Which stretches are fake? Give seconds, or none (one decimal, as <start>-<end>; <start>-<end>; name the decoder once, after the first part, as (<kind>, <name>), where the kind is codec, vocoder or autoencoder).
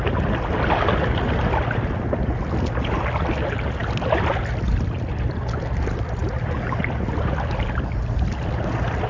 none